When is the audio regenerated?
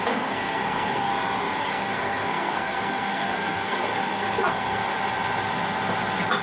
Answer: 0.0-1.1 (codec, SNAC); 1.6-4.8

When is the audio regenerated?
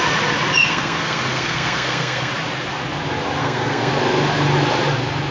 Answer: 0.6-2.3 (codec, SNAC); 3.4-3.9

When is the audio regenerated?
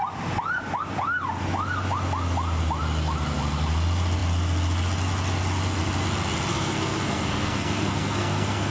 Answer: 6.5-8.7 (codec, SNAC)